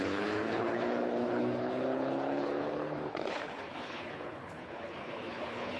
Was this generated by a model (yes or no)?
yes